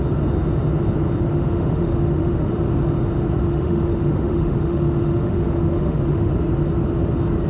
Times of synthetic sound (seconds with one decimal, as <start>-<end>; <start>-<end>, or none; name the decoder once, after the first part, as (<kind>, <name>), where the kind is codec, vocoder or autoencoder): 1.3-2.5 (autoencoder, DAC-VAE); 3.4-6.3